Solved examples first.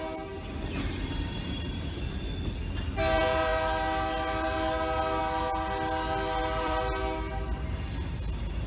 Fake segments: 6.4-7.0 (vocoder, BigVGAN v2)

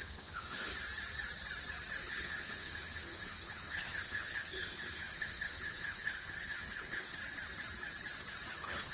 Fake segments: 0.0-0.7 (codec, HILCodec); 2.0-7.2; 8.5-8.9